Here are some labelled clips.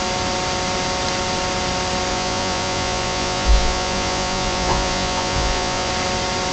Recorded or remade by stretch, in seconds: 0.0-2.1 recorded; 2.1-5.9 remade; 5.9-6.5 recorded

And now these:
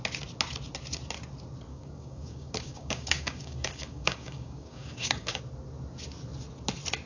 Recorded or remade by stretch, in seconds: 0.0-1.7 recorded; 1.7-5.4 remade; 5.4-7.1 recorded

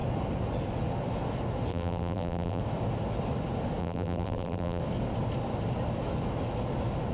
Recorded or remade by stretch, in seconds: 0.0-1.7 recorded; 1.7-2.6 remade; 2.6-3.8 recorded; 3.8-4.8 remade; 4.8-7.1 recorded

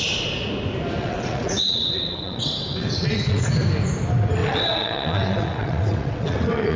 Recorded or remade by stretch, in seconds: 0.0-1.0 recorded; 1.0-3.5 remade; 3.5-4.4 recorded; 4.4-6.8 remade

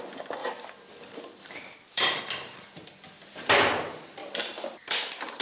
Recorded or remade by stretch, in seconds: 0.0-0.4 recorded; 0.4-3.5 remade; 3.5-4.2 recorded; 4.2-5.4 remade

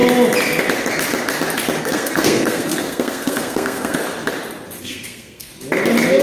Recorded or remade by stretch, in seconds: 0.0-1.8 recorded; 1.8-4.0 remade; 4.0-4.8 recorded; 4.8-5.5 remade; 5.5-6.2 recorded